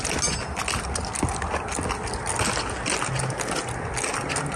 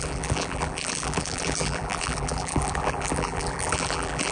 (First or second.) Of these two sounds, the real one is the first